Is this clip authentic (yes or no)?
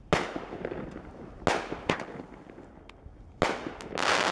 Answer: yes